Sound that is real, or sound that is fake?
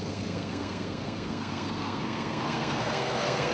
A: fake